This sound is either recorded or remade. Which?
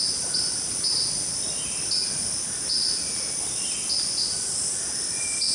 recorded